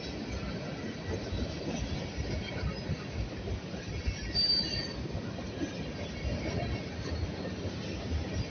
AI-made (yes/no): no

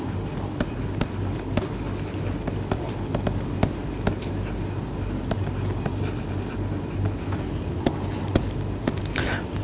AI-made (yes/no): no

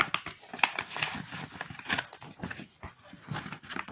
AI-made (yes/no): no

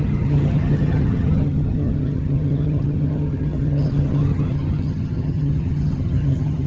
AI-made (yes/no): yes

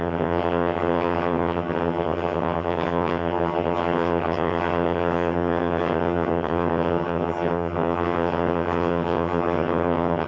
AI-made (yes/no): yes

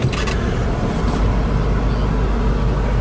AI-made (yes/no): no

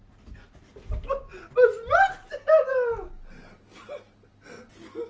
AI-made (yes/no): no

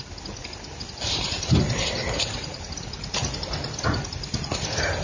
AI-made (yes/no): no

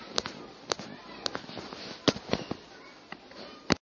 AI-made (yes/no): no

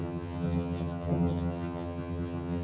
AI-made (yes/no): yes